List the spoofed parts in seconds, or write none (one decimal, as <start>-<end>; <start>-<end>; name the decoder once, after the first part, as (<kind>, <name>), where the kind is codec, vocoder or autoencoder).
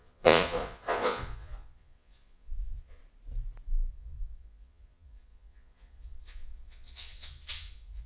0.0-3.0 (vocoder, Vocos); 3.9-8.1